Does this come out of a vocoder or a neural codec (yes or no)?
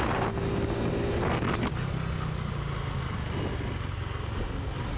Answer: no